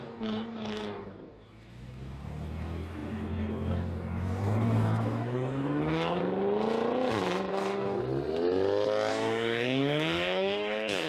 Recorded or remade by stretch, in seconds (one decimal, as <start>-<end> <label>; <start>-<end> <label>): 0.0-6.2 remade; 6.2-7.5 recorded; 7.5-8.0 remade; 8.0-9.1 recorded; 9.1-11.1 remade